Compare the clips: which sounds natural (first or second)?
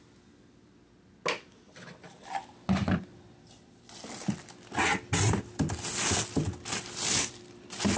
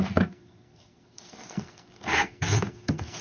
first